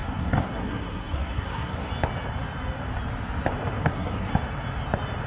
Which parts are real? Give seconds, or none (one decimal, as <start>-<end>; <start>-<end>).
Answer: 1.9-3.8; 4.3-5.3